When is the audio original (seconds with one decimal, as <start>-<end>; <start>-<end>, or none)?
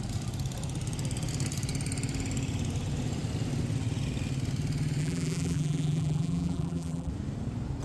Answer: 0.0-5.0; 7.1-7.8